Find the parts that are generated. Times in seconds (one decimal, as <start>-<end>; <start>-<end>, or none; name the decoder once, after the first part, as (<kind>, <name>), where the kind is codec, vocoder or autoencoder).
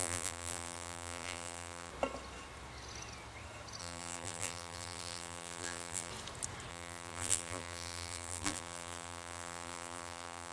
0.0-1.9 (vocoder, BigVGAN v2); 3.8-6.1; 6.7-10.5